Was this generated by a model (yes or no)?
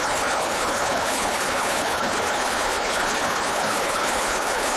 yes